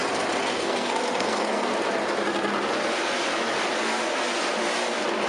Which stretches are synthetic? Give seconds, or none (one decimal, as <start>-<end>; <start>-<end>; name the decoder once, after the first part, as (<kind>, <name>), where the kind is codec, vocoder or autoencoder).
0.5-1.7 (codec, SNAC)